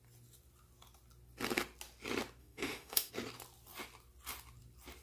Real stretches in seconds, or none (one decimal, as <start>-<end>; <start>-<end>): 0.0-2.4; 3.1-5.0